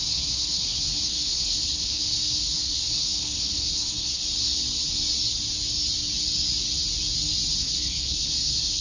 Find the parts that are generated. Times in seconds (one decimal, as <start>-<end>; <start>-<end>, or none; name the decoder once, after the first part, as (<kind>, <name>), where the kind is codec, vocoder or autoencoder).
0.0-4.2 (codec, HILCodec); 7.6-8.8